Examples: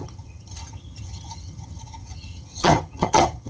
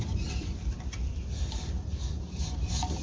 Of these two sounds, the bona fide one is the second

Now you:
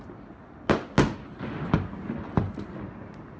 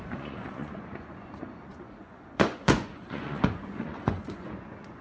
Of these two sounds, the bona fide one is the first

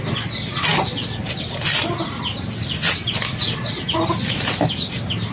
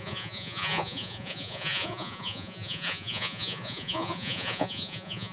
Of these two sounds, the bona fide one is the first